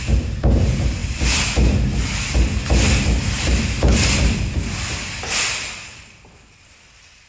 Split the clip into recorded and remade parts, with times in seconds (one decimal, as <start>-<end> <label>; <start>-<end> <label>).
0.0-7.3 recorded